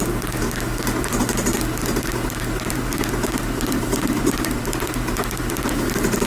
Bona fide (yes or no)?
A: no